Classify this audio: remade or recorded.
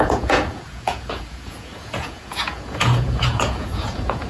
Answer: remade